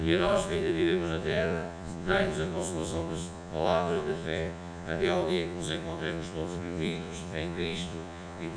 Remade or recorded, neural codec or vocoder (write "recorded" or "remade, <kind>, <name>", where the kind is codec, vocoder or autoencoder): remade, vocoder, Vocos